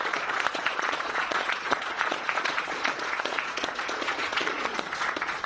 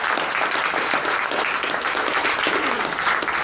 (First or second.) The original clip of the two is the second